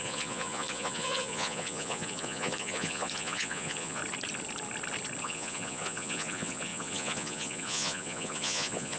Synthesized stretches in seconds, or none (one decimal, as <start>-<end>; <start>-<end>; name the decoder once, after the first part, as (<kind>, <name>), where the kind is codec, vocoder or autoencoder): 0.0-4.0 (vocoder, Vocos); 5.2-9.0